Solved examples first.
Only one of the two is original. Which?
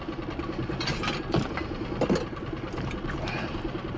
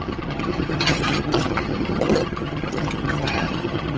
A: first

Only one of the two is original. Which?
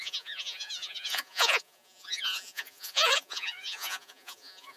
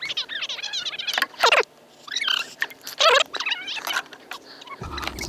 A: second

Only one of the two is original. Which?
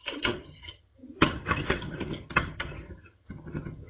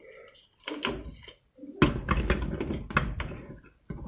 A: second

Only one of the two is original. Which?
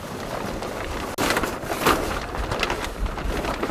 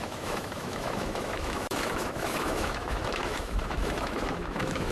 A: first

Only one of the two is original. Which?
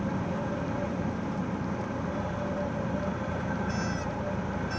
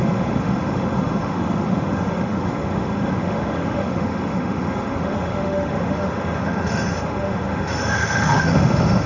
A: first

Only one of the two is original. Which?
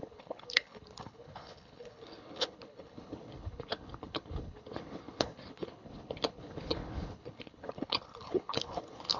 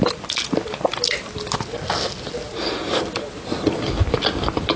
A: second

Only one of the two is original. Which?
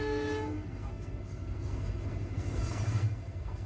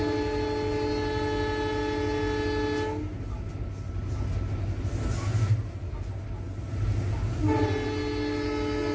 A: second